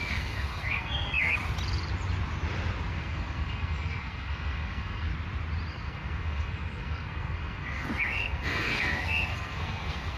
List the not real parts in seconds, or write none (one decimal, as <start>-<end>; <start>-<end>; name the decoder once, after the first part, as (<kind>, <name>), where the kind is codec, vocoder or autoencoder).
0.0-1.4 (codec, SNAC); 2.9-5.1; 5.7-10.2

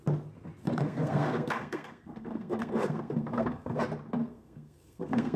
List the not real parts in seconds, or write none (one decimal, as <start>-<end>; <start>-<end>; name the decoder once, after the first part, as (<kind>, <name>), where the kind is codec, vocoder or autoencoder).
0.6-3.8 (codec, SNAC); 4.2-5.4

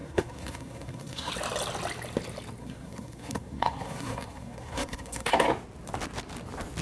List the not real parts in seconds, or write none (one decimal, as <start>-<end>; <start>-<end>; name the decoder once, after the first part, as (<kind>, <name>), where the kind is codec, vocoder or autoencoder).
0.0-1.3 (codec, SNAC); 2.6-5.3